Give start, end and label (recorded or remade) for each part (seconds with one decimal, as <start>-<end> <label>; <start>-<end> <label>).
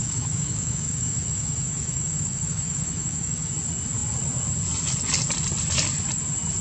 0.0-3.5 remade; 3.5-6.6 recorded